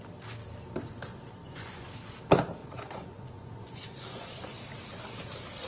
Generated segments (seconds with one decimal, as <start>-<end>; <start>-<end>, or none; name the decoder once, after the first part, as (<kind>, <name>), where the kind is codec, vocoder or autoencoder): 1.4-1.9 (vocoder, Vocos); 2.6-4.6